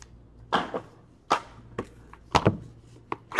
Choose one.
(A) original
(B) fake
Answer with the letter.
A